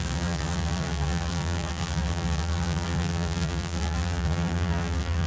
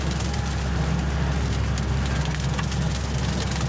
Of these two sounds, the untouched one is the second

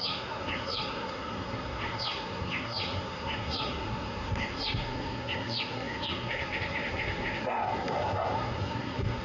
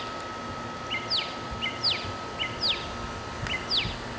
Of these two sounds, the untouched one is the second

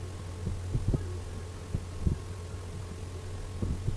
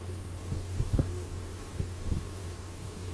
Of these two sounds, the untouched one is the first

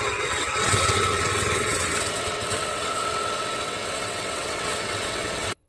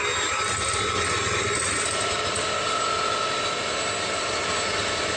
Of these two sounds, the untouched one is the second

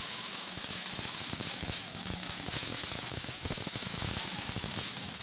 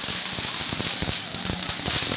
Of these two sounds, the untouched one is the second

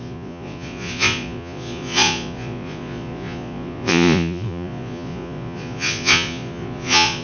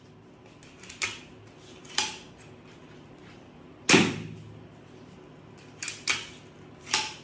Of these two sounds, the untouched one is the second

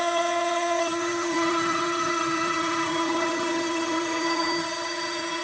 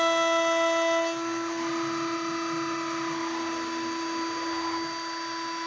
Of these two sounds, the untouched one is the second